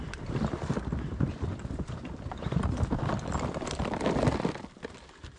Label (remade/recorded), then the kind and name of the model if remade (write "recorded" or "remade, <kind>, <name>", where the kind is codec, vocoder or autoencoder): recorded